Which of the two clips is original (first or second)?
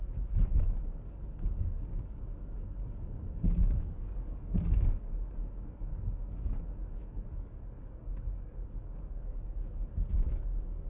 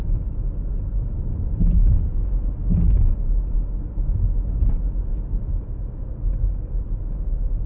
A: second